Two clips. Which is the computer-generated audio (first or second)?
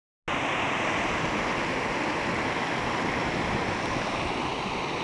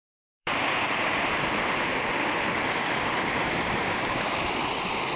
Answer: second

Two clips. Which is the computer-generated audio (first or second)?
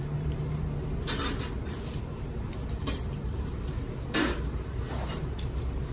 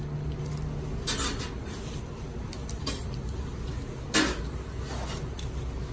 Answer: first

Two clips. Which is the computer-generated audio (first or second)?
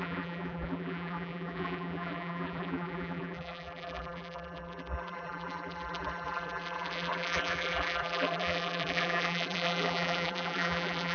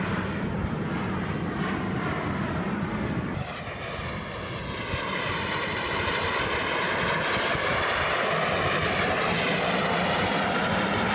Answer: first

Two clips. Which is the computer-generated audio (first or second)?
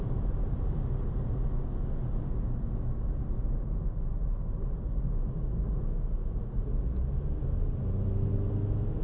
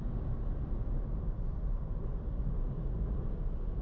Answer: second